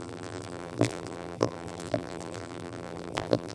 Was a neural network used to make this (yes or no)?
yes